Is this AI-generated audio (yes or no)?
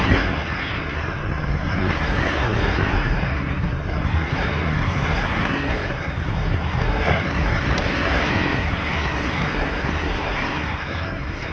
yes